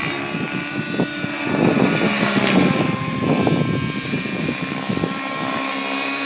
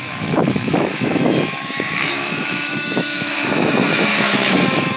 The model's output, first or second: second